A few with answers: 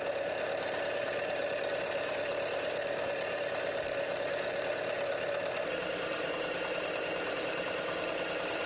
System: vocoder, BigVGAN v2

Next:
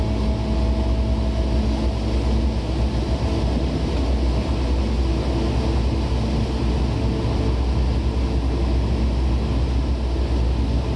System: none